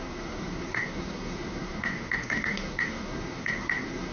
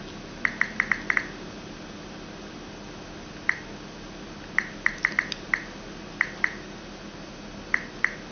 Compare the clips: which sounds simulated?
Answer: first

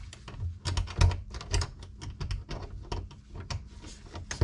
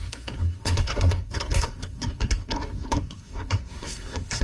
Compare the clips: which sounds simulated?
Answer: second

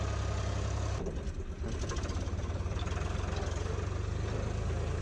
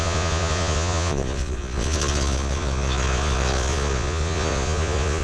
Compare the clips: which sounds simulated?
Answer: second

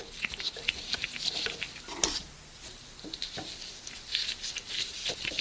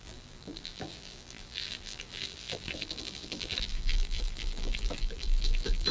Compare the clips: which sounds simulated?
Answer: second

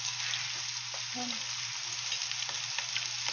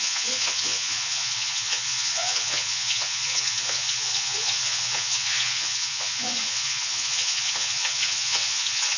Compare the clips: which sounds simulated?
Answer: second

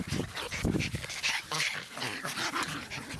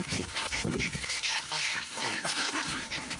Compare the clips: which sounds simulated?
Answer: second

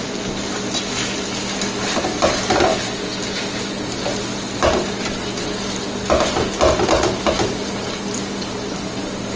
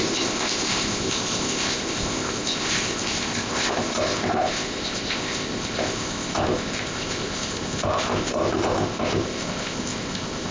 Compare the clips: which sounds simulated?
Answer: second